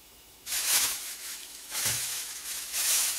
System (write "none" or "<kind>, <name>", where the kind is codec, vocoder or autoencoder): autoencoder, DAC-VAE